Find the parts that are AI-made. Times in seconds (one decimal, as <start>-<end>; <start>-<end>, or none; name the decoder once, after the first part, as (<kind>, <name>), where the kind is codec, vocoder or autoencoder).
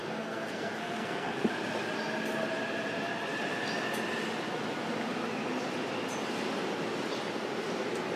0.0-1.5 (codec, SNAC)